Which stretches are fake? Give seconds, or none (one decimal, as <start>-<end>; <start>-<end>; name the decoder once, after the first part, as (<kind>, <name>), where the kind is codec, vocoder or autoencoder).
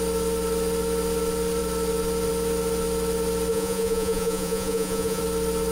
3.5-5.2 (vocoder, Vocos)